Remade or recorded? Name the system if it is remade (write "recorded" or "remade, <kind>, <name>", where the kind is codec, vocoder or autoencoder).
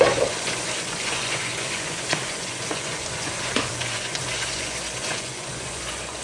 remade, vocoder, Vocos